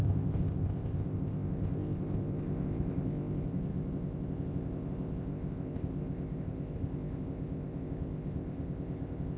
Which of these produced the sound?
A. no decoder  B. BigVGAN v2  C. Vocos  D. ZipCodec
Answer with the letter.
D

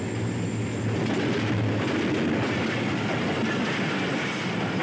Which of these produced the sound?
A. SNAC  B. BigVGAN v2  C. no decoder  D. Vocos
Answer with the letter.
C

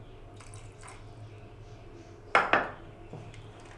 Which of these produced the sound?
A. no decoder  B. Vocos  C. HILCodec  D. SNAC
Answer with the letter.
A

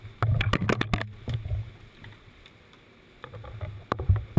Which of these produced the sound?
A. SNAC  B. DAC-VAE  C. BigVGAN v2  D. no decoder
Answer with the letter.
D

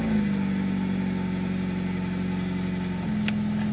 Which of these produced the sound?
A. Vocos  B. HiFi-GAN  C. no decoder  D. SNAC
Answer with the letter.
C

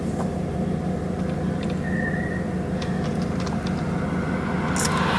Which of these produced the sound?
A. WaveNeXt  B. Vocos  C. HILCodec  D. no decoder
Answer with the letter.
D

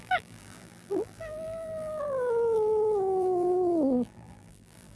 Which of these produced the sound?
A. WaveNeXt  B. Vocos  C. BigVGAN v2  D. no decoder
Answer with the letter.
C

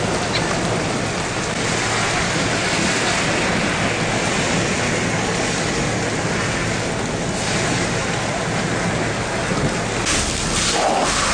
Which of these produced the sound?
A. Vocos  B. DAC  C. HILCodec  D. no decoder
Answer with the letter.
D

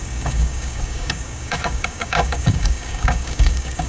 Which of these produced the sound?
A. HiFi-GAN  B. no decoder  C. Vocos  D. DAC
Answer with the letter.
D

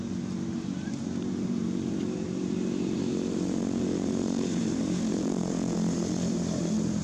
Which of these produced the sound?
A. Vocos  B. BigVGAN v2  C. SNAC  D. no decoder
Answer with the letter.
B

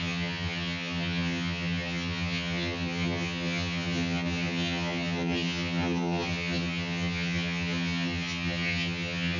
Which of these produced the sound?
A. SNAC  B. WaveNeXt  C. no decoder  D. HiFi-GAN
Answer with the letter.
D